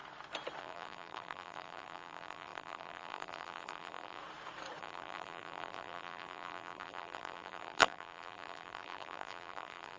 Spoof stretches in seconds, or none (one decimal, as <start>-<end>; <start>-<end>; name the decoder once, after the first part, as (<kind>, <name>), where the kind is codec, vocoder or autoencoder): 0.6-4.2 (vocoder, BigVGAN v2); 4.8-10.0